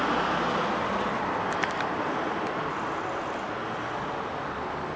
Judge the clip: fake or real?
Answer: real